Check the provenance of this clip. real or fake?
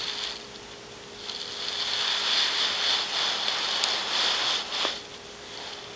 real